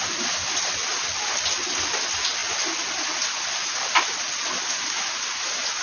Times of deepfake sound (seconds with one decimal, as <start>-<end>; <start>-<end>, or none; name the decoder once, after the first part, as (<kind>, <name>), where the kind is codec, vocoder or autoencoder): none